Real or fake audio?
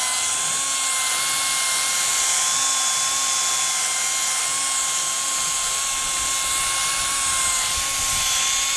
real